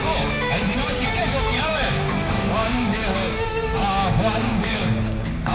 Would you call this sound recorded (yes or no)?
no